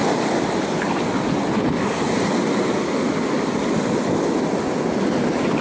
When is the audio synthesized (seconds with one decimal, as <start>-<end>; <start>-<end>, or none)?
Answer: none